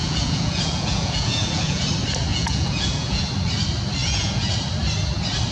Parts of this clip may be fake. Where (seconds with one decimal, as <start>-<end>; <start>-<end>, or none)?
0.0-1.8; 2.3-3.3; 4.0-4.5